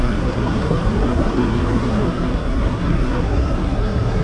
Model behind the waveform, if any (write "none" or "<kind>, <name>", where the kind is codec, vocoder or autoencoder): codec, SNAC